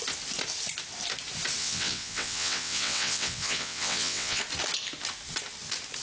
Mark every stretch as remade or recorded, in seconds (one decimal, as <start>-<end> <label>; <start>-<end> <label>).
0.0-1.6 recorded; 1.6-4.4 remade; 4.4-6.0 recorded